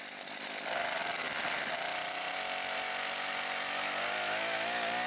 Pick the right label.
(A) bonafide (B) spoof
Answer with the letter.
A